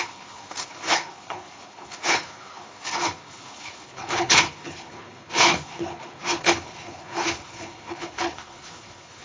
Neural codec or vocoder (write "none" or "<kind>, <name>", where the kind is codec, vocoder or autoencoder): codec, HILCodec